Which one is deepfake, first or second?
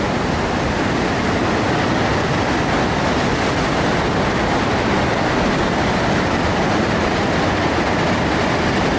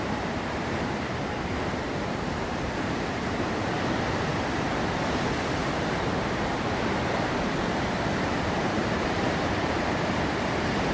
second